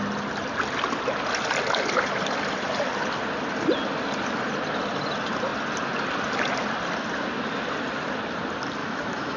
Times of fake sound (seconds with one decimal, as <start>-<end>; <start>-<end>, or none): 8.8-9.4

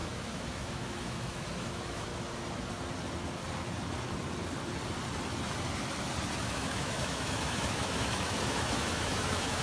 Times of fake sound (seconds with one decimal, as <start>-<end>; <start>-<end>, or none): 0.0-2.1; 6.4-9.6

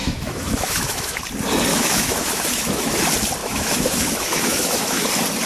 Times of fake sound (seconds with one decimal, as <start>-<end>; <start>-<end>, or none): 0.0-1.2; 1.7-3.0; 3.4-5.1

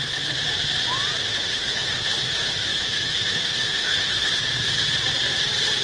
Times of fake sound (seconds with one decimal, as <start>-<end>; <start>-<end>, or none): 1.2-4.3

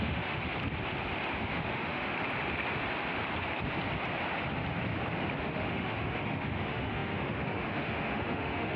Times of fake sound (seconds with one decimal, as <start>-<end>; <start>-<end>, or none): 0.0-0.4; 1.4-2.1; 5.4-8.8